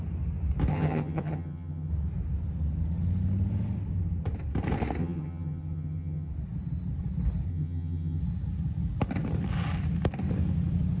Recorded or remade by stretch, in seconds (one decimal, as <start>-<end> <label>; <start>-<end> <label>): 0.0-0.7 recorded; 0.7-1.9 remade; 1.9-5.0 recorded; 5.0-6.3 remade; 6.3-7.5 recorded; 7.5-8.2 remade; 8.2-11.0 recorded